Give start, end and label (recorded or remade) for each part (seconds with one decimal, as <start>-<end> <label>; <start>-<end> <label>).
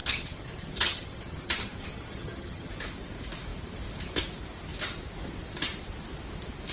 0.0-2.7 remade; 2.7-6.7 recorded